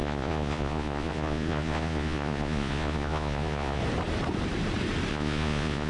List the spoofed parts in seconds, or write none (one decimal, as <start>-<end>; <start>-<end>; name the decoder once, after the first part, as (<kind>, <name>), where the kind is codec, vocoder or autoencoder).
0.0-3.8 (vocoder, Vocos); 5.1-5.9